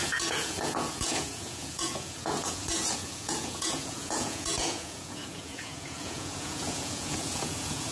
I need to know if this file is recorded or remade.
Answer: remade